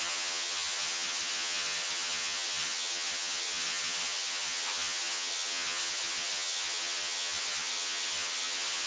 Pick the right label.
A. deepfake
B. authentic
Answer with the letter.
A